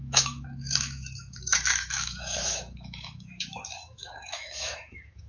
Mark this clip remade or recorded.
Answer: remade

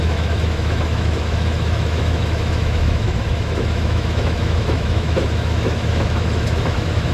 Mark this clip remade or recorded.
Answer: remade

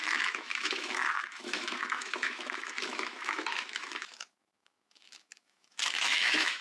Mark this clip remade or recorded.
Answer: remade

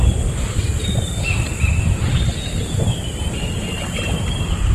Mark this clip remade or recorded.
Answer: recorded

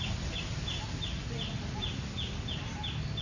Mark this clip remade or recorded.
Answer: recorded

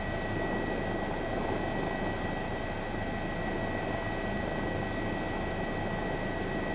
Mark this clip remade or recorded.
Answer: recorded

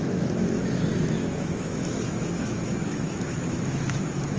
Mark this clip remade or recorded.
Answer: remade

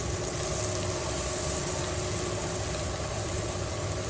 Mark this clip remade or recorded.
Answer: recorded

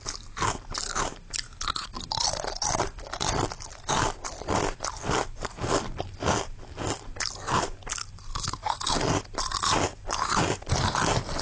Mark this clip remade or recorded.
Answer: recorded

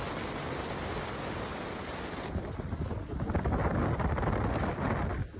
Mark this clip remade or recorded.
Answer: recorded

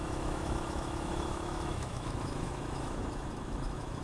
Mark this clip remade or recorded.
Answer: remade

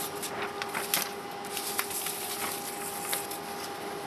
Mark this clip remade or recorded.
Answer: recorded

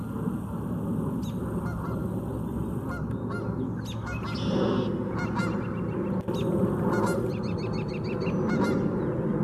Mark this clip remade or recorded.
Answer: recorded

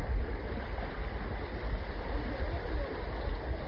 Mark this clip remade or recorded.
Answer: recorded